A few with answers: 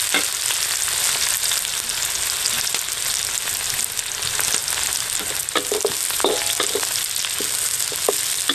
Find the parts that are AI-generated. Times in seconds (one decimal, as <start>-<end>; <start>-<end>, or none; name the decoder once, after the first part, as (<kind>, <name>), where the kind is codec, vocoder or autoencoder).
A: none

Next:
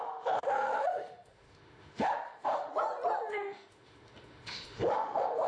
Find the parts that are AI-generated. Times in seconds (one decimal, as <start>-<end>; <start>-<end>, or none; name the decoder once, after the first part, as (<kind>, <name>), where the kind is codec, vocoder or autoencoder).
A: 0.0-2.7 (autoencoder, DAC-VAE); 3.3-5.5

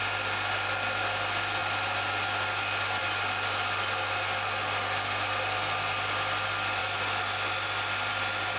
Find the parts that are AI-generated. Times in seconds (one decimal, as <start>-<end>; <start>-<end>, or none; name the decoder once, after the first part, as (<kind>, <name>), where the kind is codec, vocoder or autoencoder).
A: none

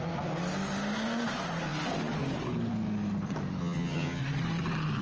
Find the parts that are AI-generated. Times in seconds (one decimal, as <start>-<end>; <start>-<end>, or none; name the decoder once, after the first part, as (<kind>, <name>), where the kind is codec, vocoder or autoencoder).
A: 3.6-4.2 (vocoder, HiFi-GAN)